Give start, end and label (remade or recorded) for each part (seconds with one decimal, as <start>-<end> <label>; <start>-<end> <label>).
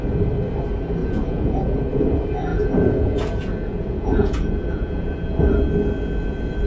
0.0-1.0 recorded; 1.0-1.9 remade; 1.9-2.5 recorded; 2.5-5.1 remade; 5.1-6.7 recorded